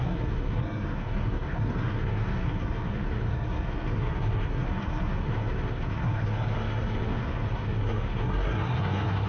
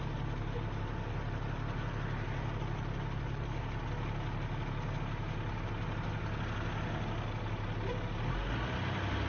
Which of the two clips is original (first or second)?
second